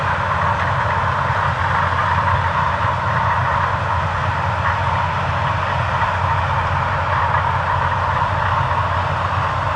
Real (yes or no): yes